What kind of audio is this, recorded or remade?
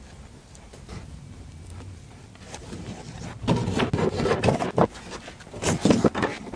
recorded